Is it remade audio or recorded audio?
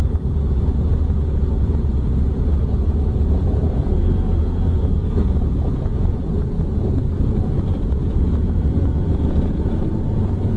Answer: remade